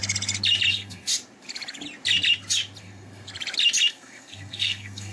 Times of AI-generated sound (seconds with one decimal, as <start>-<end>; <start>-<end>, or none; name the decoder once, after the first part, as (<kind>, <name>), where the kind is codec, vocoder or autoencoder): 0.7-1.1 (codec, SNAC); 2.8-3.3; 3.9-5.1